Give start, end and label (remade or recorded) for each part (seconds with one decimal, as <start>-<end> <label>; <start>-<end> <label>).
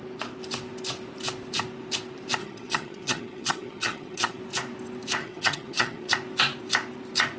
0.0-2.4 recorded; 2.4-4.4 remade; 4.4-5.2 recorded; 5.2-6.1 remade; 6.1-7.4 recorded